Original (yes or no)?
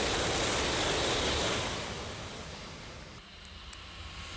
yes